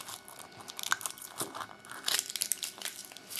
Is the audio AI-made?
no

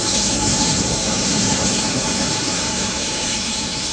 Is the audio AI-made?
yes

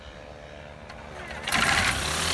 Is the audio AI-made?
no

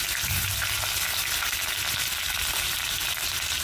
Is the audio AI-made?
no